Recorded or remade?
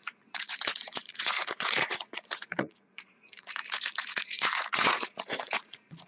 remade